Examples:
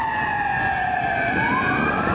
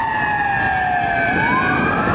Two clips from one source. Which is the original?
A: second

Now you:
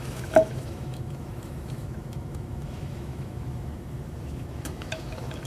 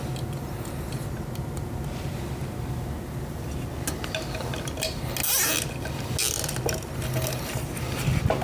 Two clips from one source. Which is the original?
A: second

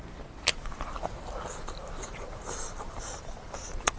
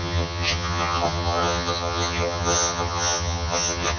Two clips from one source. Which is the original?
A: first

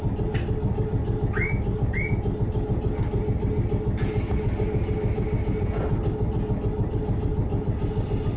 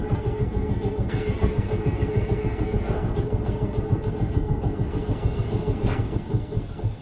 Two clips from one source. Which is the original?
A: first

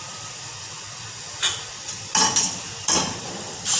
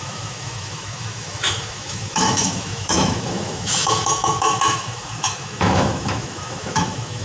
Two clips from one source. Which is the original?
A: first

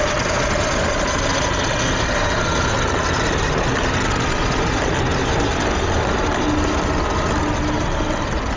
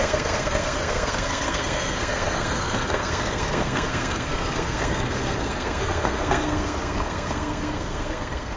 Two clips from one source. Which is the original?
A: first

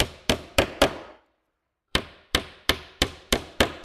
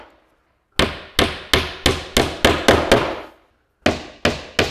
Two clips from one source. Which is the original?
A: second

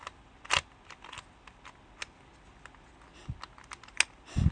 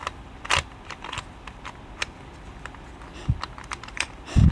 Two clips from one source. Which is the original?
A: first